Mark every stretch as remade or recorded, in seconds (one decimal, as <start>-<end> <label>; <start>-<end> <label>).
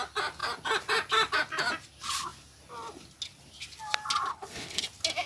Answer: 0.0-4.3 recorded; 4.3-4.8 remade; 4.8-5.3 recorded